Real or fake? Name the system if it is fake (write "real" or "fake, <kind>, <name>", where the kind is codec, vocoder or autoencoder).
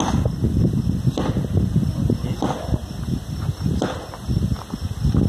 real